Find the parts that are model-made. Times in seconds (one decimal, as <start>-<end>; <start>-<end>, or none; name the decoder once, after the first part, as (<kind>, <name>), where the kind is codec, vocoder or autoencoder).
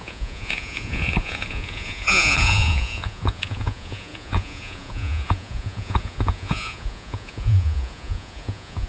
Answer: 0.0-8.9 (vocoder, Vocos)